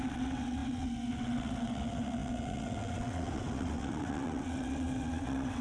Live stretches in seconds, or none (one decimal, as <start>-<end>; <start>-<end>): none